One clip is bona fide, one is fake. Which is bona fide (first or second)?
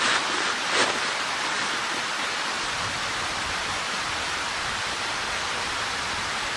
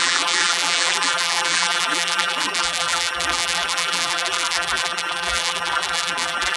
first